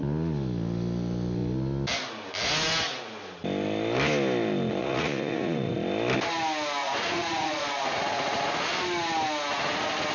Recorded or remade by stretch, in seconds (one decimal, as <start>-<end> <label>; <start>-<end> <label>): 0.0-4.8 recorded; 4.8-5.7 remade; 5.7-6.8 recorded; 6.8-8.6 remade; 8.6-10.1 recorded